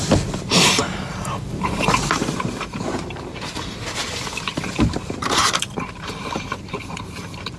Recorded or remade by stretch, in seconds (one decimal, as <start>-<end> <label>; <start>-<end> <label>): 0.0-7.6 remade